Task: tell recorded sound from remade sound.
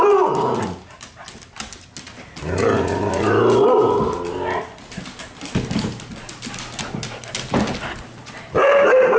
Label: recorded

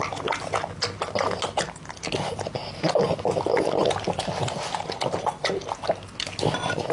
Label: recorded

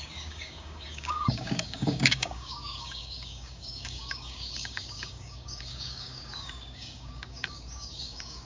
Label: remade